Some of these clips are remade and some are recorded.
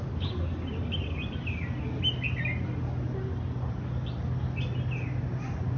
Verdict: recorded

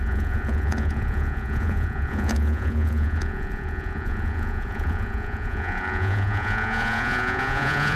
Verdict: remade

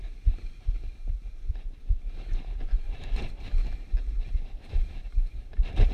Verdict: remade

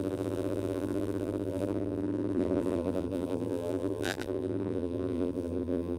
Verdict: remade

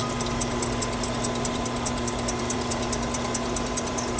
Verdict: recorded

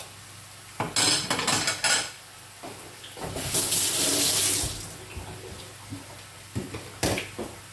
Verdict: recorded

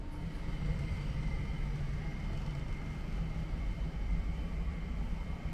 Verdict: recorded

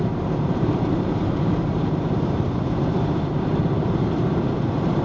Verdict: remade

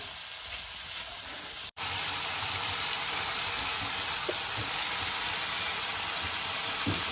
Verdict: remade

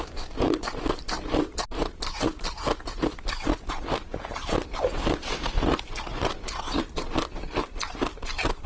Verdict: recorded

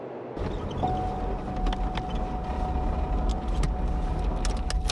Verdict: recorded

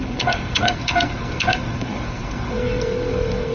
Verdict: remade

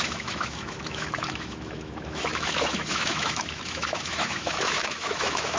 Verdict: remade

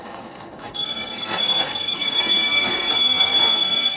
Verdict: remade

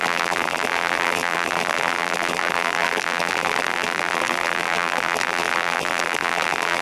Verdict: remade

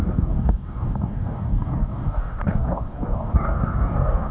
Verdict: remade